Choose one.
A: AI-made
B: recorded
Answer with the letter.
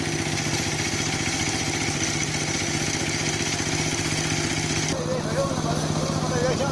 B